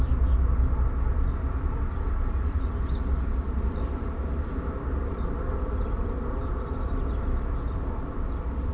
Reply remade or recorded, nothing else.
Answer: recorded